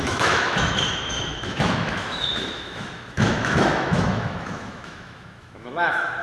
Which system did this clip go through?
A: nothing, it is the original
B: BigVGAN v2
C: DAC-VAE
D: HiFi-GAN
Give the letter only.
C